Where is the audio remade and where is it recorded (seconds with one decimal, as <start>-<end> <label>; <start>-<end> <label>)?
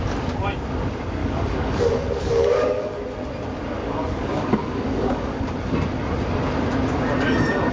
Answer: 0.0-1.2 recorded; 1.2-3.0 remade; 3.0-3.8 recorded; 3.8-5.4 remade; 5.4-7.7 recorded